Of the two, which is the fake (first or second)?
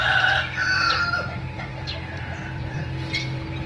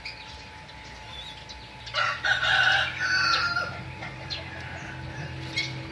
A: first